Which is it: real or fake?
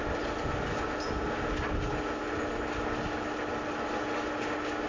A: real